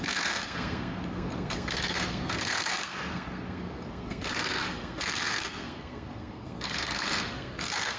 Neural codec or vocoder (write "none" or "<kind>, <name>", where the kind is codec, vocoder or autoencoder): codec, SNAC